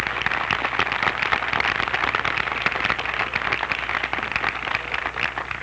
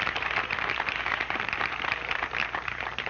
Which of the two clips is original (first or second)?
first